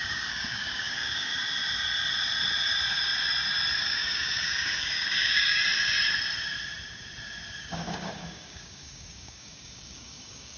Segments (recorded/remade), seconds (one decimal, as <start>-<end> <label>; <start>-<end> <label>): 0.0-1.3 remade; 1.3-3.8 recorded; 3.8-5.6 remade; 5.6-7.6 recorded; 7.6-10.6 remade